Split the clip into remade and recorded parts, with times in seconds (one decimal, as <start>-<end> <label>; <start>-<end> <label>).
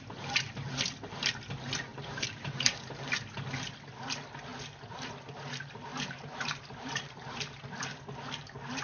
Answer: 0.0-1.9 recorded; 1.9-2.7 remade; 2.7-5.9 recorded; 5.9-7.8 remade; 7.8-8.8 recorded